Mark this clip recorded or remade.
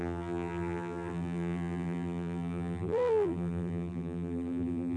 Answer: remade